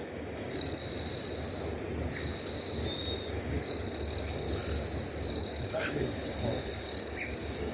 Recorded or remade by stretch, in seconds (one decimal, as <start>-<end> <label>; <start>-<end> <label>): 0.0-0.8 remade; 0.8-3.3 recorded; 3.3-4.6 remade; 4.6-5.3 recorded; 5.3-7.7 remade